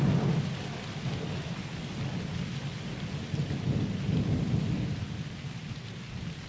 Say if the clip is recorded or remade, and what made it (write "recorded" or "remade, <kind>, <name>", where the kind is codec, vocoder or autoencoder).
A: recorded